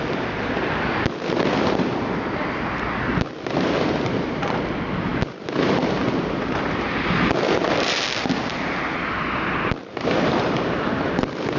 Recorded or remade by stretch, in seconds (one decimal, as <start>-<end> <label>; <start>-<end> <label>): 0.0-11.6 recorded